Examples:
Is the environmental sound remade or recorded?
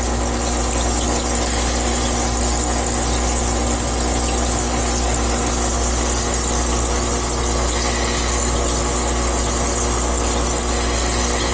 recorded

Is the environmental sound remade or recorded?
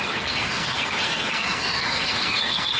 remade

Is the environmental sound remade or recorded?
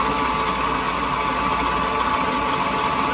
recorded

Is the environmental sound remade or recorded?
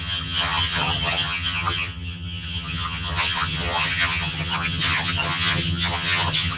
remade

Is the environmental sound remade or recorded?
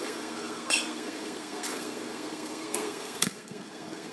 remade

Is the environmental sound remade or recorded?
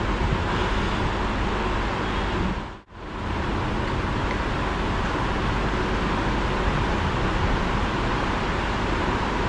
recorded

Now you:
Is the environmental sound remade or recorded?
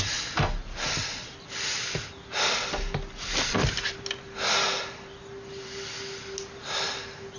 recorded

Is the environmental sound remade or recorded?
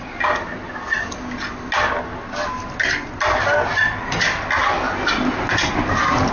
recorded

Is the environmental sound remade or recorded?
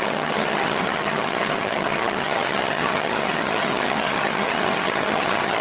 remade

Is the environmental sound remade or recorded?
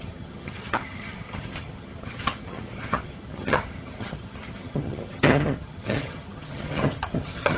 remade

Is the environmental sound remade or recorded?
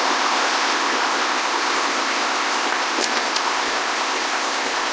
remade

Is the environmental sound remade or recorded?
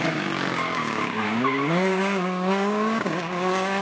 remade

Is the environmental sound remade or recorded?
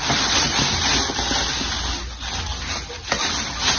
recorded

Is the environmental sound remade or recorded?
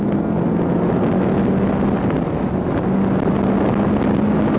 recorded